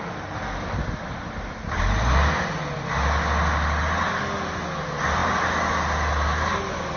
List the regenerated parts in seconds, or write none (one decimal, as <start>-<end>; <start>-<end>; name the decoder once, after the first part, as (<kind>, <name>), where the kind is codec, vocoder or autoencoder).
none